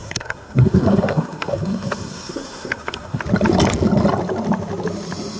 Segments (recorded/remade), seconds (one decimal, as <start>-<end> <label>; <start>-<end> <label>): 0.0-3.2 remade; 3.2-5.4 recorded